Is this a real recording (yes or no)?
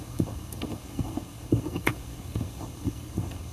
no